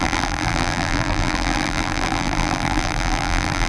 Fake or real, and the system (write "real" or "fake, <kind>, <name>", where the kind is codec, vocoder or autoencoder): fake, vocoder, BigVGAN v2